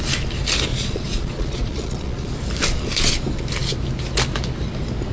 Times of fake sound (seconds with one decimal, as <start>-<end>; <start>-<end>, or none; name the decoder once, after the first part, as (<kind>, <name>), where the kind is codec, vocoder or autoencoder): 0.7-2.3 (vocoder, Vocos)

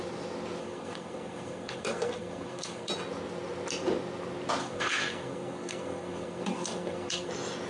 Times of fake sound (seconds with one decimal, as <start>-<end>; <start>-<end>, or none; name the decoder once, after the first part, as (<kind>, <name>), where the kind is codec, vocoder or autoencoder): 0.6-2.9 (codec, SNAC); 4.6-7.3

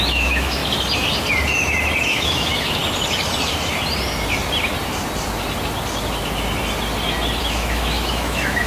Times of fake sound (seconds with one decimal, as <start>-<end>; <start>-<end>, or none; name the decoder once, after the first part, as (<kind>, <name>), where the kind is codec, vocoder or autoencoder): 0.0-0.6 (autoencoder, DAC-VAE); 2.0-2.8; 7.4-8.7